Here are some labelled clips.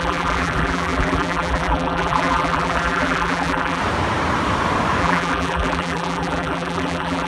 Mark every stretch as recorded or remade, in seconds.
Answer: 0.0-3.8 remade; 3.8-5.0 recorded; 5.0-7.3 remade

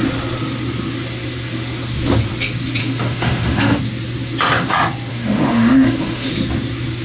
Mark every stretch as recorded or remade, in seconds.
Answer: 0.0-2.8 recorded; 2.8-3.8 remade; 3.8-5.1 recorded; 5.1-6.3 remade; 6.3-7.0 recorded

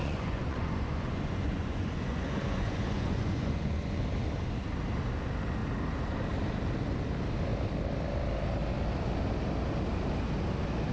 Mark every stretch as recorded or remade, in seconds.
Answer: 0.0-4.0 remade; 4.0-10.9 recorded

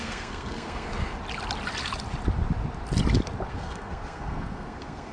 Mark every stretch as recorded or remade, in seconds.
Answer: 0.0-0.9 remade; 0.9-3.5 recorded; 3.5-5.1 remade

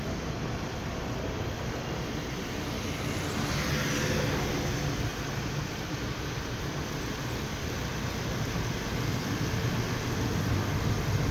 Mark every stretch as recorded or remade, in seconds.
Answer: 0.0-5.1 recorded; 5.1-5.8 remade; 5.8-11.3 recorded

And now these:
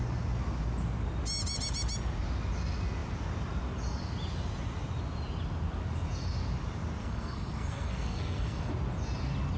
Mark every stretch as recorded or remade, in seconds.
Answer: 0.0-7.0 recorded; 7.0-8.7 remade; 8.7-9.6 recorded

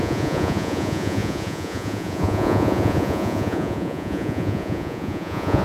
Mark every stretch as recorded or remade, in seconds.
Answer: 0.0-5.6 remade

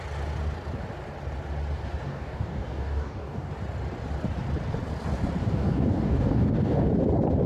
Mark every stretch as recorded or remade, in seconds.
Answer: 0.0-2.1 recorded; 2.1-3.5 remade; 3.5-5.4 recorded; 5.4-6.9 remade; 6.9-7.5 recorded